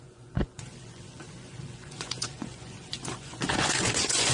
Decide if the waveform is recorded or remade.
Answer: remade